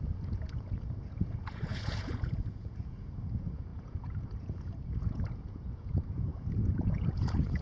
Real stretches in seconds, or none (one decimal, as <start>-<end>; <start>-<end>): none